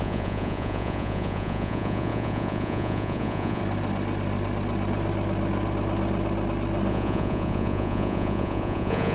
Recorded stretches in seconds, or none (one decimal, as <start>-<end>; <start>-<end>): 3.6-6.9